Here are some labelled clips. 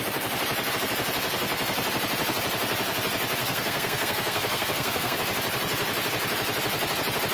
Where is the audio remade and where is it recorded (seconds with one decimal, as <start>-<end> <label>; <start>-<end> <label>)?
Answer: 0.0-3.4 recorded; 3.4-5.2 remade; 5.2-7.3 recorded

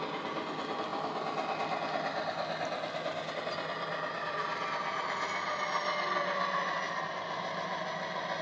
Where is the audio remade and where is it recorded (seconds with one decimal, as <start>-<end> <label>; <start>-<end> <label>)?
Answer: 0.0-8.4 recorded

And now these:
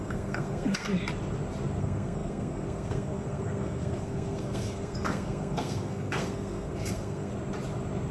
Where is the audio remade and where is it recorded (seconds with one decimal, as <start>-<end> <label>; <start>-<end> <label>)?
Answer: 0.0-0.9 remade; 0.9-1.8 recorded; 1.8-7.3 remade; 7.3-8.1 recorded

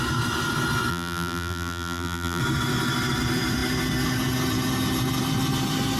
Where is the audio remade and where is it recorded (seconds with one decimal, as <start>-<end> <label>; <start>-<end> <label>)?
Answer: 0.0-0.9 recorded; 0.9-2.4 remade; 2.4-6.0 recorded